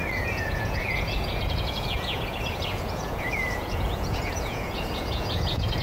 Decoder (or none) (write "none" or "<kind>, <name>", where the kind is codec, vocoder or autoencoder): vocoder, Vocos